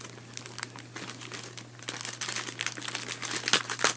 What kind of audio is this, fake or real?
real